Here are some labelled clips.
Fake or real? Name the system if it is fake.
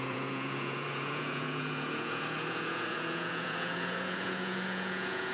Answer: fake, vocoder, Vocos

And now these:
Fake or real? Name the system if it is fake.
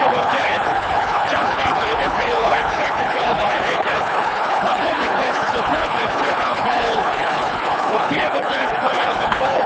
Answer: fake, codec, HILCodec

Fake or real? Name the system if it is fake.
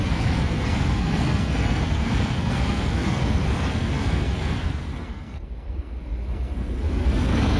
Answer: fake, codec, SNAC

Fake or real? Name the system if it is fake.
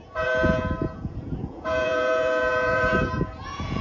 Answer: fake, vocoder, Vocos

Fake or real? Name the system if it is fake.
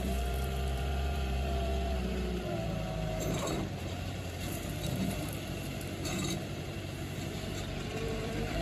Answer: fake, vocoder, BigVGAN v2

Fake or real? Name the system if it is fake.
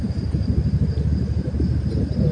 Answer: real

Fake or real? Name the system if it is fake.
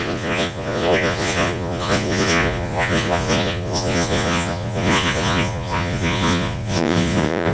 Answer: fake, vocoder, Vocos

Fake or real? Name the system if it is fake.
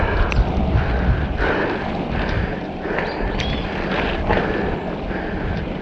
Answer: real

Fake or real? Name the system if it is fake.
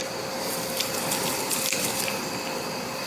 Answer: fake, vocoder, BigVGAN v2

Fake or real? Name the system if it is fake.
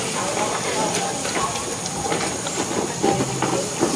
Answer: real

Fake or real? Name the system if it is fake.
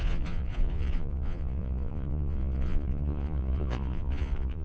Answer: fake, vocoder, Vocos